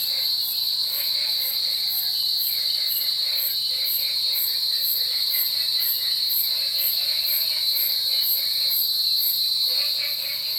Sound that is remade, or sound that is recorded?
remade